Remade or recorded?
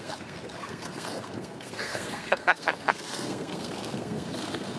remade